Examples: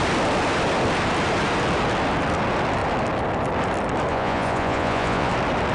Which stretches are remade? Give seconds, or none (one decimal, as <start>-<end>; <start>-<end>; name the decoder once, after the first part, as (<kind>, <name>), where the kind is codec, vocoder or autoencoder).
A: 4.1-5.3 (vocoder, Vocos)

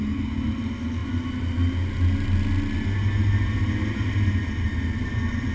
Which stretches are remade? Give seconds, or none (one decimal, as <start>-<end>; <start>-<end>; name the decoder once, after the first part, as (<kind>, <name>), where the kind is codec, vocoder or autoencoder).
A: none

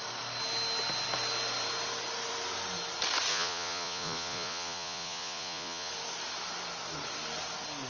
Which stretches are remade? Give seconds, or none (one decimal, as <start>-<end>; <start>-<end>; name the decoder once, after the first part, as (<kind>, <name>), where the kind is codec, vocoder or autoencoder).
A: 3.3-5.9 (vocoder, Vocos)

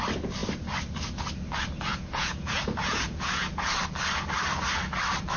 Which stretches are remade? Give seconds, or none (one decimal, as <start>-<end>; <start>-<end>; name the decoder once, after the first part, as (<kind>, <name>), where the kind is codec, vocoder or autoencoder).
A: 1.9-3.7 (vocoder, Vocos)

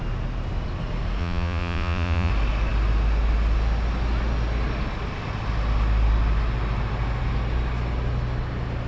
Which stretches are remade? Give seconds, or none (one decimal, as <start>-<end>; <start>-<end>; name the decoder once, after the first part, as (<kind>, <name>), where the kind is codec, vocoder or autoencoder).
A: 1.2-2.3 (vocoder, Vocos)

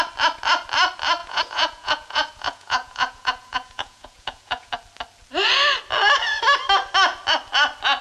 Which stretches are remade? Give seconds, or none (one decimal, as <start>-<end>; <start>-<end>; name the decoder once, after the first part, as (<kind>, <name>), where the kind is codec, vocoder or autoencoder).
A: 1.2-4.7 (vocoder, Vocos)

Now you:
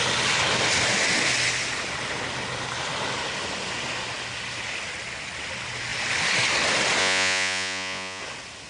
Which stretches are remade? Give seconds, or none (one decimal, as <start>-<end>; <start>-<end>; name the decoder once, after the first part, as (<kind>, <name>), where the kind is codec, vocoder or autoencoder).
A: 7.0-8.2 (vocoder, Vocos)